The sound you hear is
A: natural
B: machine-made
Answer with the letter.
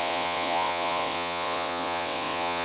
B